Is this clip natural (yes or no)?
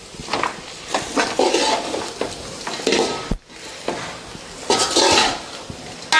yes